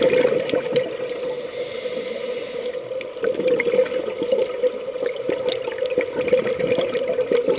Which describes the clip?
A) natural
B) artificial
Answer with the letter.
A